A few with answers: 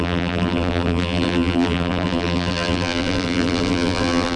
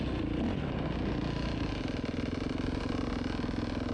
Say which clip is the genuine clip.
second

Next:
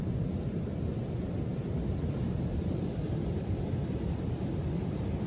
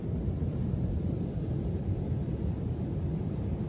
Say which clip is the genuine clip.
second